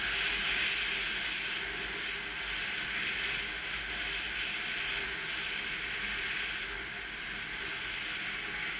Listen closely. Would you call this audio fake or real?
real